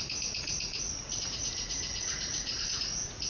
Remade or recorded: remade